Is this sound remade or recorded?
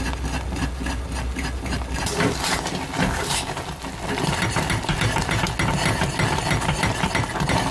recorded